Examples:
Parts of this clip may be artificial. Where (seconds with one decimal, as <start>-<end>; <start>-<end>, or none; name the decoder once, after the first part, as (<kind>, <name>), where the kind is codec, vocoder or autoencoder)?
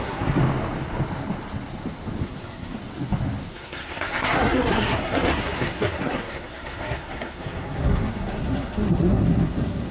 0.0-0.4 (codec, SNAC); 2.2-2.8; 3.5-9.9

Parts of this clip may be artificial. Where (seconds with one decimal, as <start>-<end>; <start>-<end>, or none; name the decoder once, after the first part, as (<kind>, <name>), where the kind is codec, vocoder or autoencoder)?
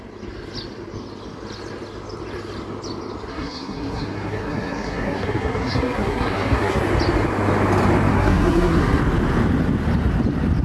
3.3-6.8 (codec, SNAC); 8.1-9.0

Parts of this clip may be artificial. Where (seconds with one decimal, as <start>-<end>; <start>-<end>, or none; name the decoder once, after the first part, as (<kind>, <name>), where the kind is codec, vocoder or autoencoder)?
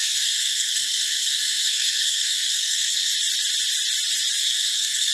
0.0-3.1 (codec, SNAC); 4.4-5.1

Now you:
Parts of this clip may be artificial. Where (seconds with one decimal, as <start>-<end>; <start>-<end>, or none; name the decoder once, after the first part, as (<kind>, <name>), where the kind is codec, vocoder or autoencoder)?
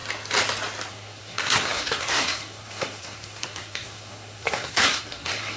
0.9-5.6 (codec, SNAC)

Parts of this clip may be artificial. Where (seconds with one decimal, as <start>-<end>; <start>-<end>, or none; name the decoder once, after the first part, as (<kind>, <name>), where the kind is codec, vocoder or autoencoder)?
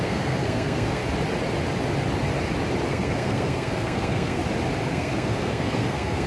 0.0-1.0 (codec, SNAC); 2.9-4.4; 4.9-6.3